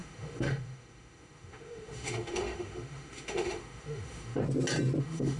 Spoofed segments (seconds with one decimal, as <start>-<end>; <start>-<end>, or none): 0.0-4.4; 5.0-5.4